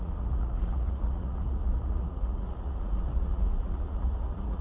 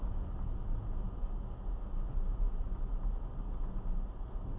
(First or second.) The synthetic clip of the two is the first